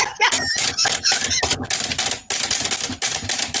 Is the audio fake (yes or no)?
no